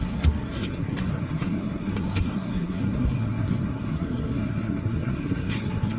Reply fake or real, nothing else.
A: fake